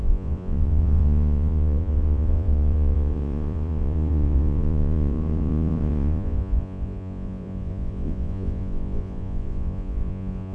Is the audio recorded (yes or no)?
no